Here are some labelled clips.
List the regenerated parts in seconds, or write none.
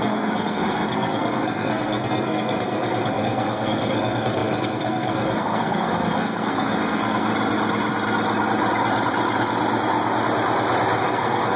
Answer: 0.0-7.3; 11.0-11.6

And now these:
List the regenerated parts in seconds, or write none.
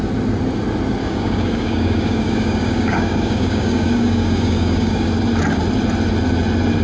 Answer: 1.0-5.1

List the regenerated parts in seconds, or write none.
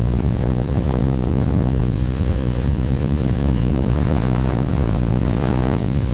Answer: 0.0-6.1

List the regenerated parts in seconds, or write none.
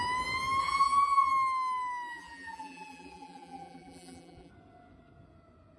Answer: 0.6-1.3; 2.1-4.5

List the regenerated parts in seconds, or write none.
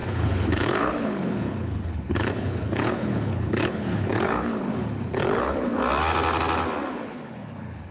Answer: 0.0-5.8; 6.9-7.9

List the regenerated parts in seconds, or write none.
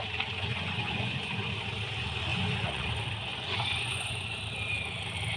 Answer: 0.5-1.5; 2.3-2.9; 3.3-4.3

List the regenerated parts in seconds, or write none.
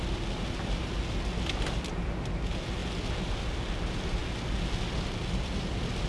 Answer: none